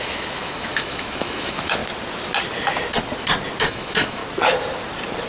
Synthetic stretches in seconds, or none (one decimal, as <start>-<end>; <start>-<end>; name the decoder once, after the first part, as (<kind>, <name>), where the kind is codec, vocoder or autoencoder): 0.0-1.8 (autoencoder, DAC-VAE); 3.6-4.2